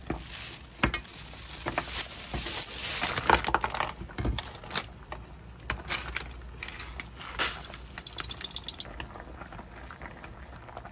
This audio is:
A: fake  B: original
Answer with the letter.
B